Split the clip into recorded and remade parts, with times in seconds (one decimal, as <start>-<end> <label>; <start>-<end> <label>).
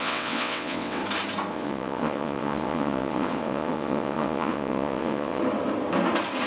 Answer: 0.0-1.0 remade; 1.0-1.5 recorded; 1.5-5.4 remade; 5.4-6.5 recorded